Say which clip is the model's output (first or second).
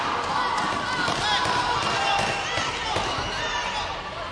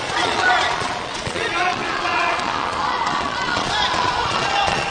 second